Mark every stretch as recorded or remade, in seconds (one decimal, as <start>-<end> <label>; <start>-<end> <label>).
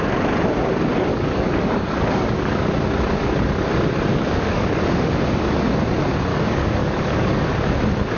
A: 0.0-1.1 recorded; 1.1-2.7 remade; 2.7-4.1 recorded; 4.1-4.8 remade; 4.8-6.3 recorded; 6.3-7.5 remade; 7.5-8.2 recorded